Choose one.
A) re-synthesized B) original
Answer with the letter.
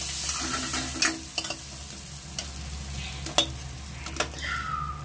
B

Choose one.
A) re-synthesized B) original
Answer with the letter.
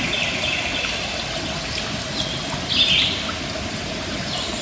B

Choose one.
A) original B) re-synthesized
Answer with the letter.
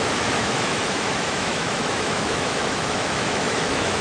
B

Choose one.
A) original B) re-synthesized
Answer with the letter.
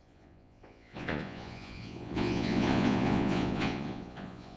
B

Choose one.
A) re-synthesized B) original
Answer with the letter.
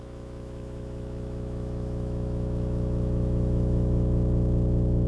A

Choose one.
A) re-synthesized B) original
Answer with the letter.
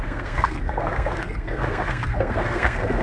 A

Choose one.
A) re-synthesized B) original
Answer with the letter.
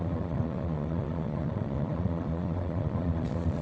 A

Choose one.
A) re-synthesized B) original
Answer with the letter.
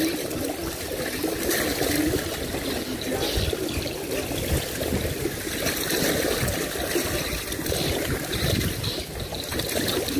B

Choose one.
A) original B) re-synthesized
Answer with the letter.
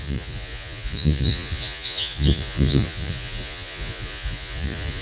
B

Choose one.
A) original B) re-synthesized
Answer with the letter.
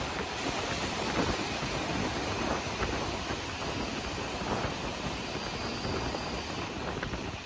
A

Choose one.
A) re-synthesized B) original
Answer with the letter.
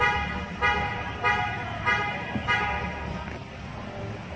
B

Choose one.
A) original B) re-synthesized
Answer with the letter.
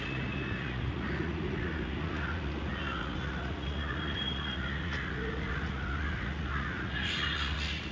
B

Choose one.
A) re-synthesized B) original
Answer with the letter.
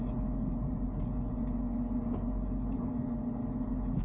B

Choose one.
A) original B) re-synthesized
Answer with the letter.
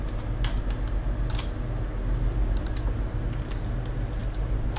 A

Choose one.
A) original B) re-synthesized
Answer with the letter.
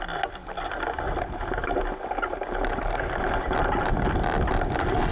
A